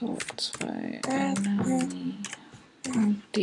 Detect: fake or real real